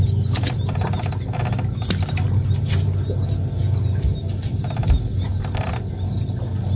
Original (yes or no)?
yes